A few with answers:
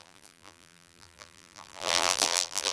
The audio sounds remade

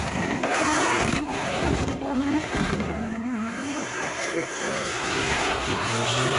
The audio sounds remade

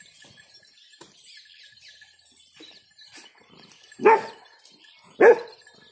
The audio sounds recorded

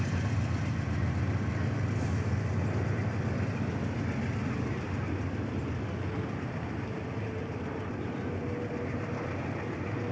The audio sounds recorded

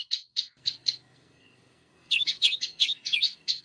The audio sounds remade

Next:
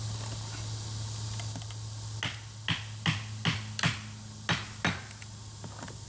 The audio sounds recorded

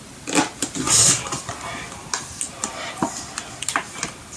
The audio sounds recorded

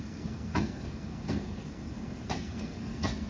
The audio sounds remade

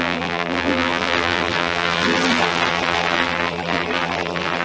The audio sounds remade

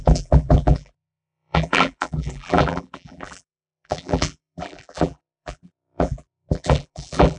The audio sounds remade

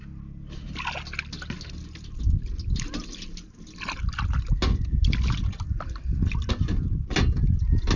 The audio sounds recorded